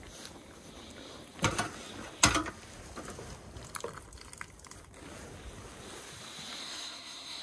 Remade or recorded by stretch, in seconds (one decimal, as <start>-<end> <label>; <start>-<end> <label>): 0.0-6.6 recorded; 6.6-7.4 remade